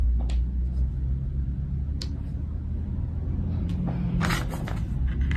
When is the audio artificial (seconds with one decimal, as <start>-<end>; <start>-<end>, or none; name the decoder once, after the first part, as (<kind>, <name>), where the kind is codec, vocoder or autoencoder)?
3.7-4.3 (vocoder, BigVGAN v2)